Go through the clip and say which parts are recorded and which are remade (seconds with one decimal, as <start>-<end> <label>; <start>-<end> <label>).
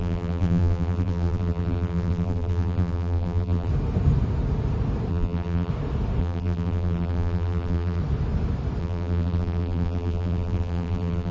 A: 0.0-3.7 remade; 3.7-5.1 recorded; 5.1-5.7 remade; 5.7-6.2 recorded; 6.2-8.0 remade; 8.0-8.8 recorded; 8.8-11.3 remade